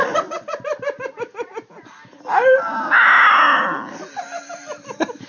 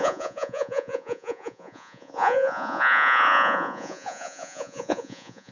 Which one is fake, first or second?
second